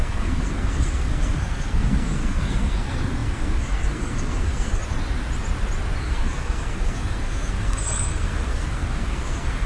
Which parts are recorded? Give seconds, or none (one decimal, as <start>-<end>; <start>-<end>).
4.8-6.0